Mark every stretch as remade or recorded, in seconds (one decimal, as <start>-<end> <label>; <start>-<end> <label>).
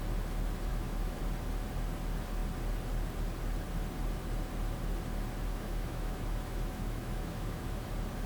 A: 0.0-0.7 recorded; 0.7-1.2 remade; 1.2-5.5 recorded; 5.5-7.9 remade; 7.9-8.3 recorded